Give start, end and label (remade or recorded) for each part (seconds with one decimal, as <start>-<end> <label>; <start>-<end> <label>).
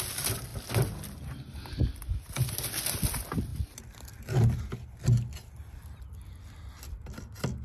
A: 0.0-7.6 recorded